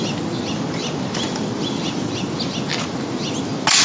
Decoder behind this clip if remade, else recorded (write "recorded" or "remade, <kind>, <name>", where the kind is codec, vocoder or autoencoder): recorded